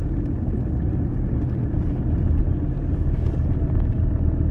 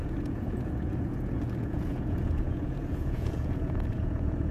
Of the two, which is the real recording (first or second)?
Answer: first